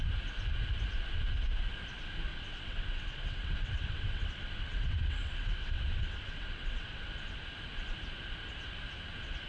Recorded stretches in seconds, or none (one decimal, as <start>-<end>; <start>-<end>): 0.0-2.3; 7.1-9.5